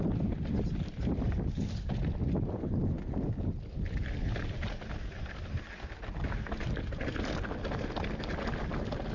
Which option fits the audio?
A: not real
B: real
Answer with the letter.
B